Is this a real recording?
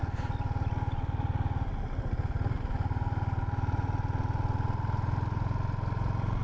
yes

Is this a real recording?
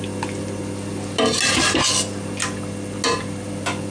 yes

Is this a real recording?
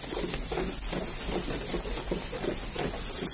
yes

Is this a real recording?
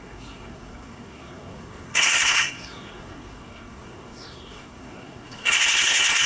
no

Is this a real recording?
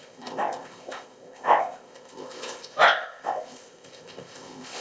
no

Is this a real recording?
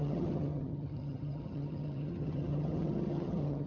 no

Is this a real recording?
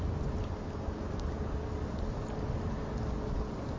yes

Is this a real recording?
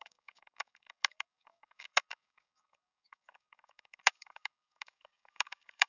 no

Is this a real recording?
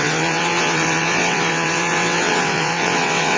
no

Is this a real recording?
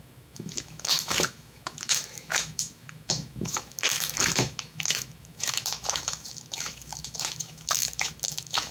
no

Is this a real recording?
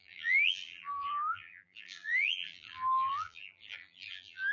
no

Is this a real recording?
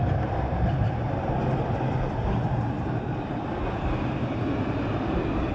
yes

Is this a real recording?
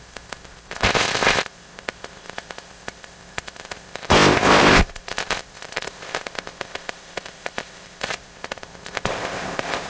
no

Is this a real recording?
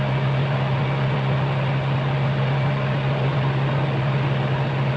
yes